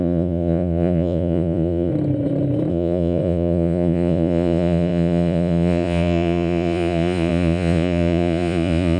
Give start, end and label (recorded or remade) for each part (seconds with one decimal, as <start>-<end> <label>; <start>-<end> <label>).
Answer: 0.0-1.9 remade; 1.9-2.7 recorded; 2.7-9.0 remade